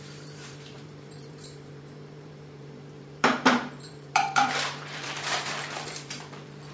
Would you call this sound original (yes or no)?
no